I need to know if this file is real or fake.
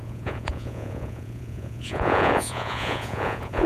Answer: fake